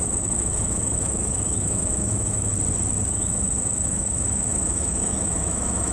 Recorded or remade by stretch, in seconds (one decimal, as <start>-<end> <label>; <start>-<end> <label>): 0.0-2.5 remade; 2.5-3.1 recorded; 3.1-5.9 remade